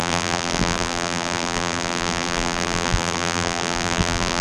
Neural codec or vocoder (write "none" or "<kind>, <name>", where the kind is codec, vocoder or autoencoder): vocoder, BigVGAN v2